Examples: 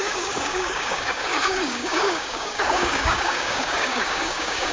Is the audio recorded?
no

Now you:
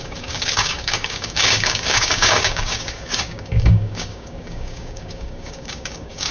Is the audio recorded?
no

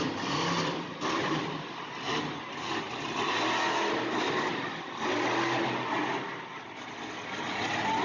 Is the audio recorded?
yes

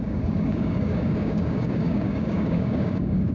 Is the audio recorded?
no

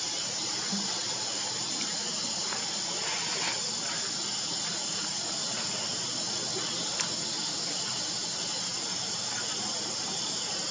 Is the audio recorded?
yes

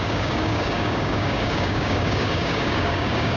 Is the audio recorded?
no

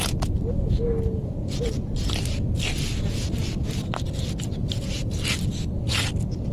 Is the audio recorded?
yes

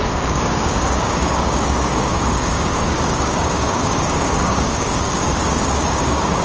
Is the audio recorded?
no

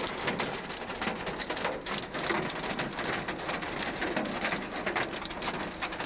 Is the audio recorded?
yes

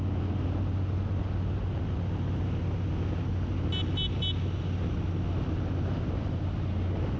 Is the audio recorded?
yes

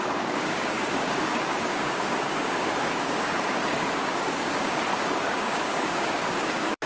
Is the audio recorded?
no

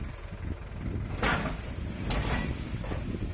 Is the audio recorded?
yes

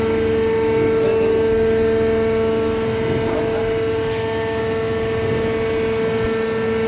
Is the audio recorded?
yes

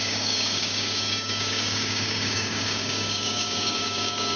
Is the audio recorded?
no